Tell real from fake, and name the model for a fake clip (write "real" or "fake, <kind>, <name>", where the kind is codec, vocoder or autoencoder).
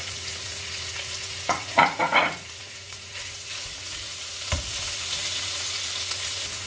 fake, vocoder, Vocos